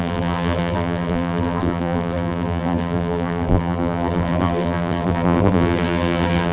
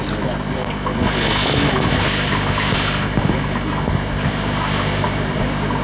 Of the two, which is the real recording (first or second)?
second